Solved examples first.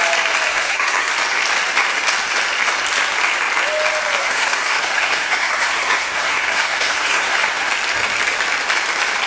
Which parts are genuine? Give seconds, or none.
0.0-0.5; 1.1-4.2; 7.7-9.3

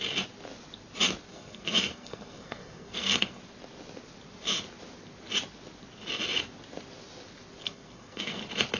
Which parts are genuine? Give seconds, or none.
0.0-1.3; 3.4-7.6; 8.4-8.8

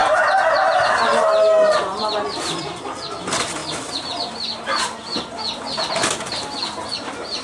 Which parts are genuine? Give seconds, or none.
0.0-7.4